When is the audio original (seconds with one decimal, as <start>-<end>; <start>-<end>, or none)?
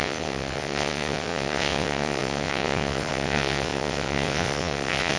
none